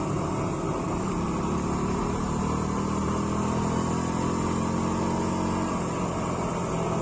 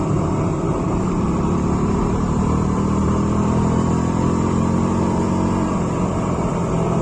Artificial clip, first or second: second